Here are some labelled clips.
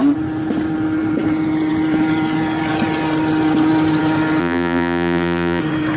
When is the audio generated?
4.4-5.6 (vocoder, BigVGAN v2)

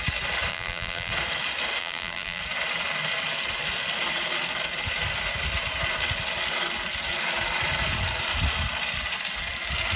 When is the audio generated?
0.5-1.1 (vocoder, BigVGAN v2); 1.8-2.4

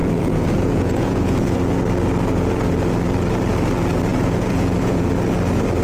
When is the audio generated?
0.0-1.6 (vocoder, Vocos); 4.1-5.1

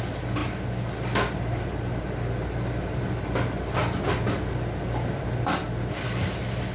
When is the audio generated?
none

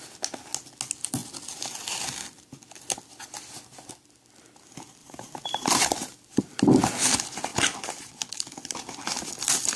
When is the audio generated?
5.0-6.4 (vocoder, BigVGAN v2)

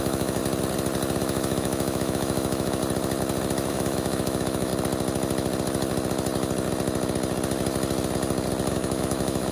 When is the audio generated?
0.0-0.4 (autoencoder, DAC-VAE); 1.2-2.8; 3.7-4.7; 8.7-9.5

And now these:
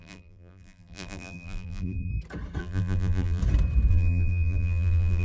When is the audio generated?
0.0-2.1 (vocoder, BigVGAN v2); 2.6-3.4; 3.9-5.2

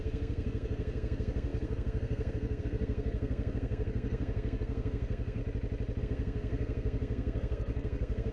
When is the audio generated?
0.0-5.4 (codec, SNAC); 6.0-8.3